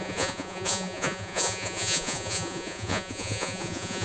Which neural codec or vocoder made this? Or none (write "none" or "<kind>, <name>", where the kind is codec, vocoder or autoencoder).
vocoder, Vocos